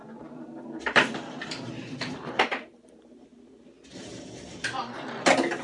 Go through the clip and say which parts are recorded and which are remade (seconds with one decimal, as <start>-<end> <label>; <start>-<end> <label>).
0.0-5.6 recorded